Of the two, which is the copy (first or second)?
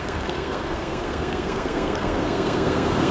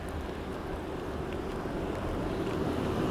first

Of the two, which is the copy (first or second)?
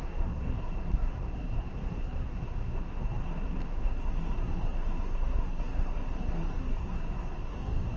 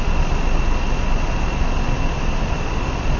first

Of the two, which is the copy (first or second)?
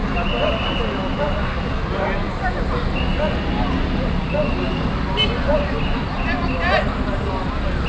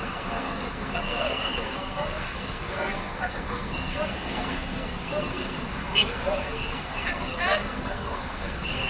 second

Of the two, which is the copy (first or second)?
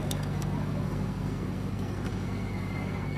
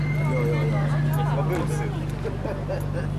first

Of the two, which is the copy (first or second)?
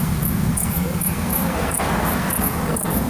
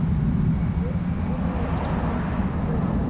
first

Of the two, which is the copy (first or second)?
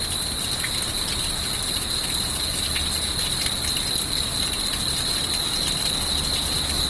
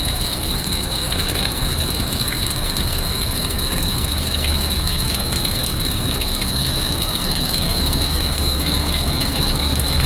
second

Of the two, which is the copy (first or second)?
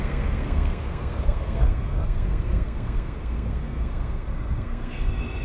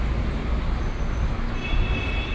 first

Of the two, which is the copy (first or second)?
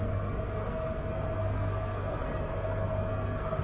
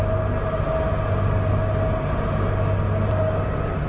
first